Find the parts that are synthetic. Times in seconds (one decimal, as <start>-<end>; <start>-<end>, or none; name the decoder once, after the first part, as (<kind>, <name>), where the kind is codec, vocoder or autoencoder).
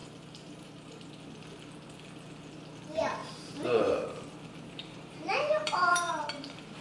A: 0.0-1.1 (vocoder, BigVGAN v2); 3.2-3.9; 4.8-6.8